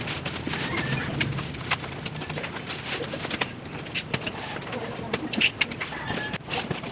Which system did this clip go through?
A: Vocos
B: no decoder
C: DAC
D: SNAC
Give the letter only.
B